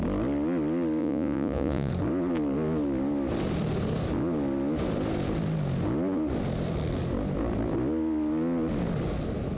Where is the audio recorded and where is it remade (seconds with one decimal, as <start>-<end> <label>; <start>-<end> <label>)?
0.0-1.0 recorded; 1.0-1.9 remade; 1.9-9.6 recorded